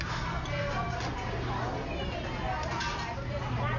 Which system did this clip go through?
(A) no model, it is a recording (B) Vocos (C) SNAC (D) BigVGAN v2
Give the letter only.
A